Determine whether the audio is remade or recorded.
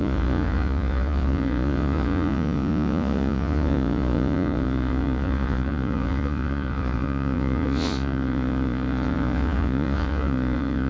remade